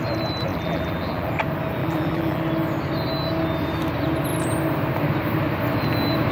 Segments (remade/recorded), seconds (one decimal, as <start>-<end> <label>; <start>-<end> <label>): 0.0-0.5 recorded; 0.5-1.3 remade; 1.3-1.8 recorded; 1.8-2.4 remade; 2.4-6.3 recorded